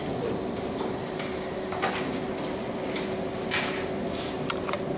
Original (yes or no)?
yes